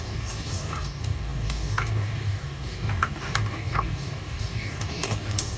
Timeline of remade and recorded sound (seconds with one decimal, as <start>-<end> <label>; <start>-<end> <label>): 0.0-5.6 remade